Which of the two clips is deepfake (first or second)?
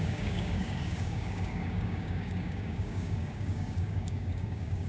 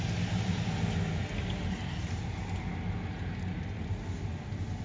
first